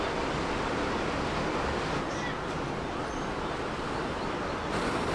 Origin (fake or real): real